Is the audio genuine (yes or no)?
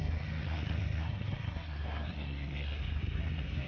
no